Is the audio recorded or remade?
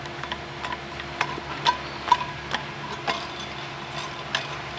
recorded